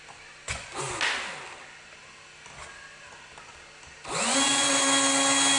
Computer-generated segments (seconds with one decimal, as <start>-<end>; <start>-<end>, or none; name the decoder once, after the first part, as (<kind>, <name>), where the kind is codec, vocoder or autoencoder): 0.4-0.9 (vocoder, Vocos); 4.1-4.7